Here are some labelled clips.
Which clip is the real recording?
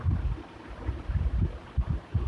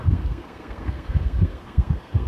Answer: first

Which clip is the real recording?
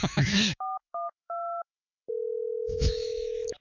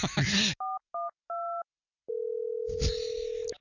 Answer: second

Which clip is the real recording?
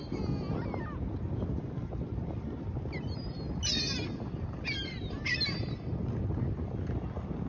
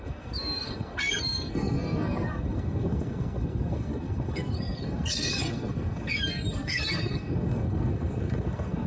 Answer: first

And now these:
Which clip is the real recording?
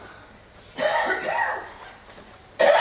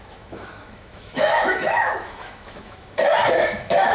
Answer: first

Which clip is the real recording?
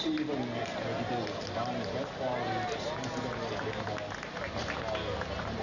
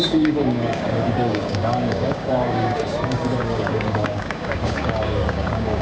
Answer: first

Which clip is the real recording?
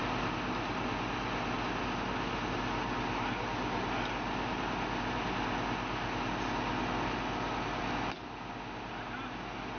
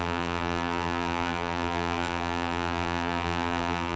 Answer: first